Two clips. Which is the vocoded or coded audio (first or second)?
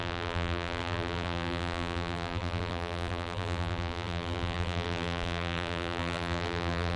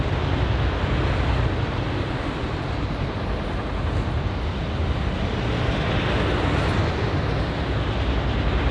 first